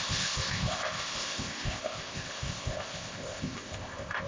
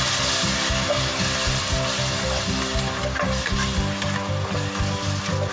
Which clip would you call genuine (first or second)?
second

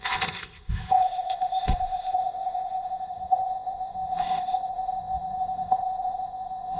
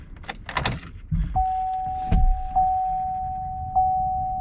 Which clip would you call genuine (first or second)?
second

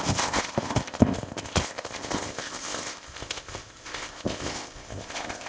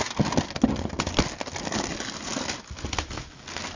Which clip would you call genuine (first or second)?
second